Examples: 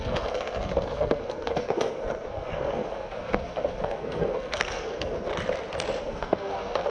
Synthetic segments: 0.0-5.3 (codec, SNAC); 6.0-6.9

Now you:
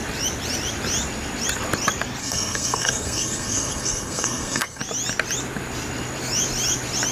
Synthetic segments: 2.2-4.8 (codec, SNAC)

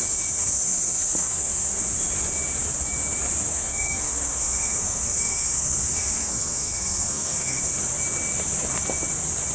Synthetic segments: 0.4-1.7 (codec, SNAC); 3.5-7.6